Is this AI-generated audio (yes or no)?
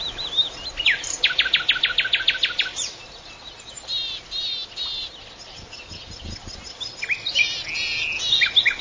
no